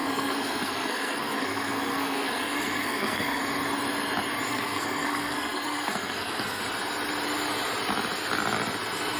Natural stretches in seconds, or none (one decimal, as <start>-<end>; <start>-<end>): 3.4-4.5; 6.6-9.2